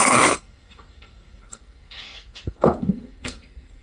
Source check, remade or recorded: remade